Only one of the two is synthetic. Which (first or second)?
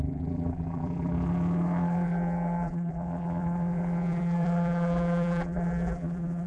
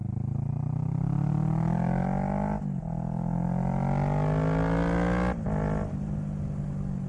first